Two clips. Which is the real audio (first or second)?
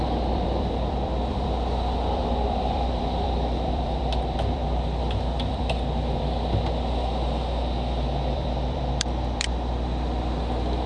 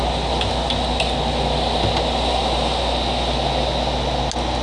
second